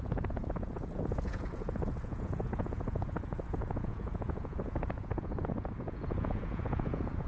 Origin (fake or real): fake